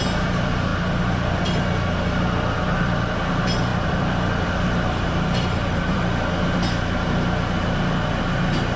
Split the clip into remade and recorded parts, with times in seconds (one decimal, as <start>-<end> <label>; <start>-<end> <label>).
0.0-0.7 recorded; 0.7-1.4 remade; 1.4-3.7 recorded; 3.7-6.2 remade; 6.2-8.8 recorded